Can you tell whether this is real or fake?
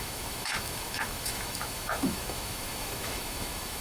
fake